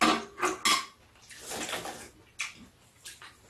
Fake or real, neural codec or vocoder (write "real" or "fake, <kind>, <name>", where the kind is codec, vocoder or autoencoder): real